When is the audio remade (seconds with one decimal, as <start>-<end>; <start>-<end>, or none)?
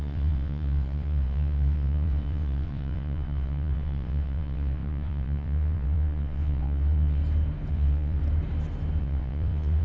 0.0-7.2; 7.7-8.2; 9.0-9.8